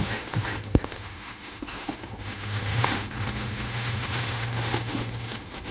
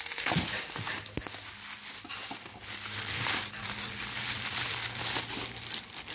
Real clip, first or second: second